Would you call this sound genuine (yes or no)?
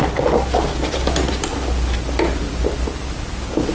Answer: yes